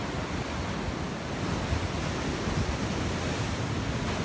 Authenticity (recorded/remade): recorded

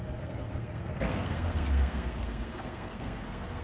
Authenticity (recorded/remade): remade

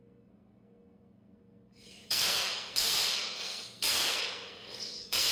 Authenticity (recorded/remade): remade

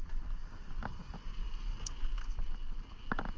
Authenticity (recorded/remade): recorded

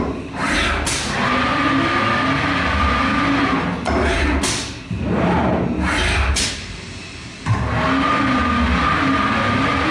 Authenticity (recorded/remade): recorded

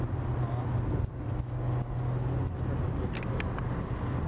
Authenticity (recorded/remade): recorded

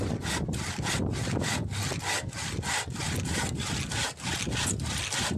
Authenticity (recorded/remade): recorded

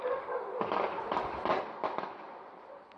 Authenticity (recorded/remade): recorded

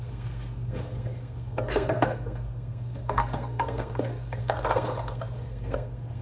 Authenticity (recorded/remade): remade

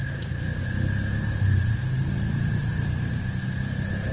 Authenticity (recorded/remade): recorded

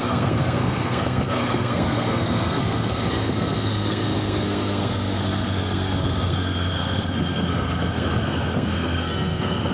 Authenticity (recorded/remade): remade